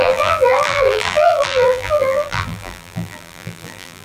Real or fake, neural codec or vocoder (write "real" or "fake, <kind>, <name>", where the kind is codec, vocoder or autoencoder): fake, vocoder, BigVGAN v2